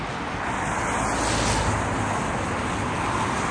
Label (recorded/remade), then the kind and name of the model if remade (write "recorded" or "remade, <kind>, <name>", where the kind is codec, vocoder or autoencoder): recorded